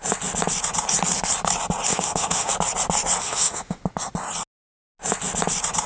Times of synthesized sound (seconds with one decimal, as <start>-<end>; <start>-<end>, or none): 1.9-2.5; 3.2-3.8